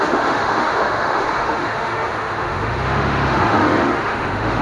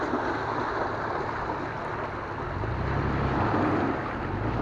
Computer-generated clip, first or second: first